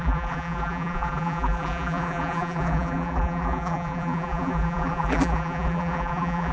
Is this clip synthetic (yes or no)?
yes